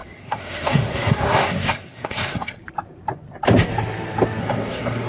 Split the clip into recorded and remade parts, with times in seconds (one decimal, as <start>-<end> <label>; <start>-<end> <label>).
0.0-2.6 remade; 2.6-4.4 recorded; 4.4-5.1 remade

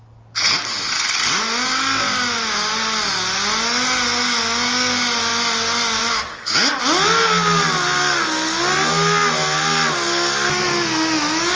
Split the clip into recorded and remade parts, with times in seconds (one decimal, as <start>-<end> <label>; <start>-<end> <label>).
0.0-11.6 recorded